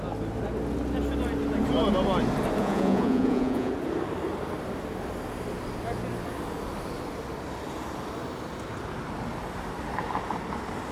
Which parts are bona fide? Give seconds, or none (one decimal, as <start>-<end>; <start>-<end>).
0.0-2.6; 3.7-10.9